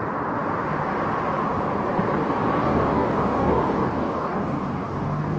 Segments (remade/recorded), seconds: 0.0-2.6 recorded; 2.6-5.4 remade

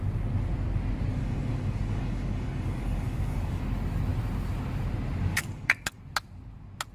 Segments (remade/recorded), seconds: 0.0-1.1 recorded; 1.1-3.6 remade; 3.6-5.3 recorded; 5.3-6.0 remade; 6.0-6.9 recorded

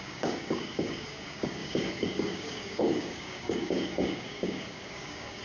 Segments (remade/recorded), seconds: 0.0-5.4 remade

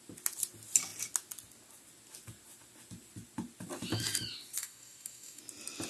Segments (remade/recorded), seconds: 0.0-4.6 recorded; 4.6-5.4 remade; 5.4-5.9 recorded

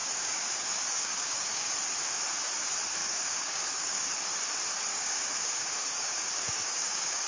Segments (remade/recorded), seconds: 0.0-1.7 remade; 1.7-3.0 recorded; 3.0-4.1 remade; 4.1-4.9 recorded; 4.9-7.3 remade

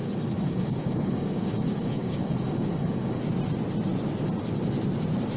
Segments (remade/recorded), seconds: 0.0-3.2 remade; 3.2-5.4 recorded

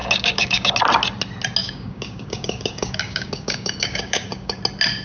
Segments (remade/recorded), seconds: 0.0-0.7 remade; 0.7-1.6 recorded; 1.6-4.6 remade; 4.6-5.0 recorded